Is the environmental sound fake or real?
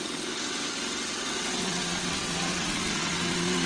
fake